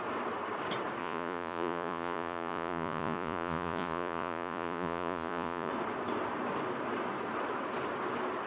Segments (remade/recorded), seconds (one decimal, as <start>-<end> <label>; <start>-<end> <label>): 0.0-1.0 recorded; 1.0-5.7 remade; 5.7-8.5 recorded